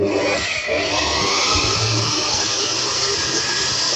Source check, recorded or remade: remade